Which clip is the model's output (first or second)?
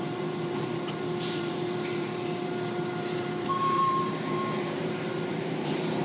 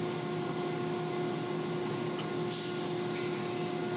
first